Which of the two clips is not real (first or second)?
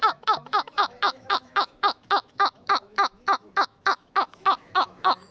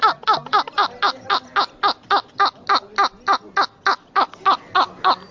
first